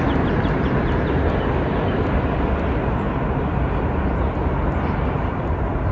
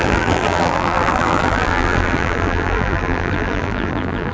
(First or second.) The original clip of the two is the first